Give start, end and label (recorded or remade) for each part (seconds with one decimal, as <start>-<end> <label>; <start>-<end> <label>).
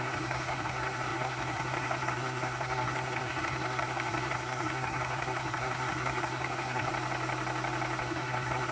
0.0-6.9 remade; 6.9-8.0 recorded; 8.0-8.7 remade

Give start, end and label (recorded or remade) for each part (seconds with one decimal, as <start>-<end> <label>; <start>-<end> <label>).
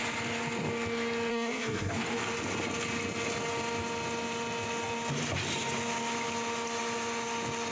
0.0-1.3 recorded; 1.3-1.9 remade; 1.9-7.7 recorded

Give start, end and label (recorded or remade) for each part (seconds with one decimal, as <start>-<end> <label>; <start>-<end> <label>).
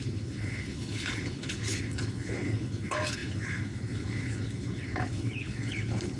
0.0-6.2 remade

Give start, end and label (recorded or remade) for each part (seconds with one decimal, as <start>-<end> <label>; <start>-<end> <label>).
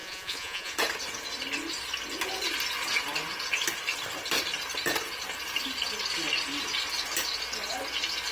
0.0-0.7 remade; 0.7-8.3 recorded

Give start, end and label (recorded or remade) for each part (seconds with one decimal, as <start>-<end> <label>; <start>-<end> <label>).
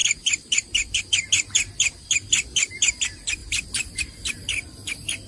0.0-1.0 remade; 1.0-3.4 recorded; 3.4-4.0 remade; 4.0-5.3 recorded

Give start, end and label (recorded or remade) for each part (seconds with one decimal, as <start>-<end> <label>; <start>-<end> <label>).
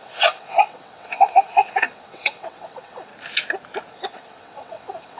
0.0-3.1 remade; 3.1-3.9 recorded; 3.9-5.2 remade